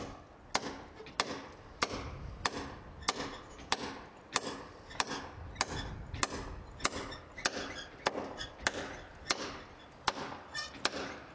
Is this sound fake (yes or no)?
no